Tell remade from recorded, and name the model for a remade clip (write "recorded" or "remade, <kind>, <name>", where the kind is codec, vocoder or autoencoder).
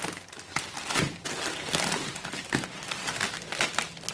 recorded